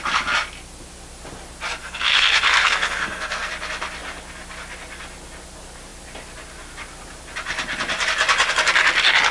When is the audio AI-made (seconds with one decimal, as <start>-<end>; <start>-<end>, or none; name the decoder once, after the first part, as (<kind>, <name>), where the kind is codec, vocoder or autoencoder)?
1.8-3.5 (codec, SNAC)